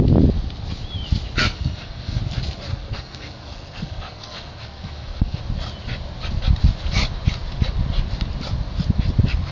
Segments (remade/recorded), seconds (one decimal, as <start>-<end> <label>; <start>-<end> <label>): 0.0-1.4 recorded; 1.4-2.2 remade; 2.2-2.7 recorded; 2.7-5.4 remade; 5.4-9.5 recorded